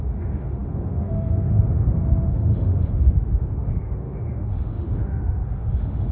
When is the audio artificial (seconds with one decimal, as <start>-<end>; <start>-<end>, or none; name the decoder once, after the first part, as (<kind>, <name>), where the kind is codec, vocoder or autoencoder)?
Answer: 0.0-6.1 (autoencoder, DAC-VAE)